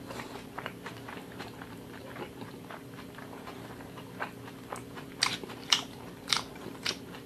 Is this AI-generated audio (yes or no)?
yes